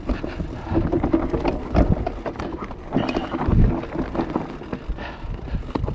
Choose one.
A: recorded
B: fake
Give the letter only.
A